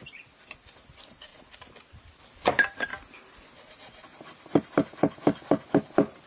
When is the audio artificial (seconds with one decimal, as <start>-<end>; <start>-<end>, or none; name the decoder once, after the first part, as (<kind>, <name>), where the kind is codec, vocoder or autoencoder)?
none